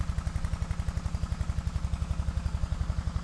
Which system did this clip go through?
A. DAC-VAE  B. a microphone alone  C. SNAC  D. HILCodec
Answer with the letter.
B